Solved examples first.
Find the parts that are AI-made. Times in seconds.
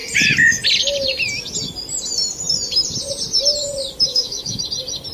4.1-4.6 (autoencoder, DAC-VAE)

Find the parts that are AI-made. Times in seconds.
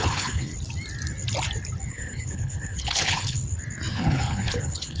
0.0-0.5 (codec, HILCodec); 1.9-3.4; 3.9-5.0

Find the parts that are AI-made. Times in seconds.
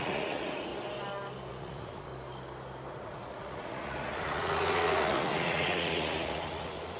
0.0-0.7 (vocoder, Vocos); 1.5-2.1; 2.9-7.0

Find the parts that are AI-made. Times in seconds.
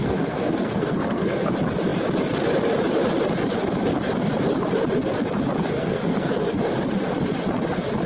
0.0-1.5 (codec, SNAC); 5.8-6.7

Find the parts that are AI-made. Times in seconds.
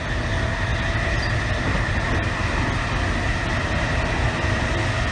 none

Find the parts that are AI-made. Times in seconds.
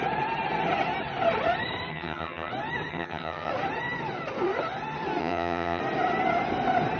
1.9-2.5 (vocoder, HiFi-GAN); 2.9-3.5; 5.2-5.8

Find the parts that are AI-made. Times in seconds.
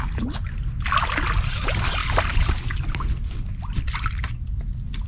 none